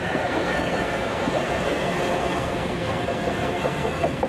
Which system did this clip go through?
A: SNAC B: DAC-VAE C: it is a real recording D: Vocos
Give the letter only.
A